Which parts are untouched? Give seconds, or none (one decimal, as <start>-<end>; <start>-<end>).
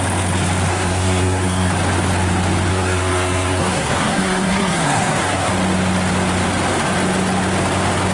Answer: 0.0-0.7; 1.7-2.7; 5.5-8.1